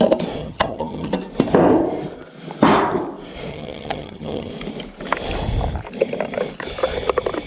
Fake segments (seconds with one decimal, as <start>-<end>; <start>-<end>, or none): 0.4-1.1; 3.5-4.5